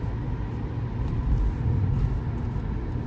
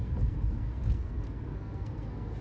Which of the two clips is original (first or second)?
first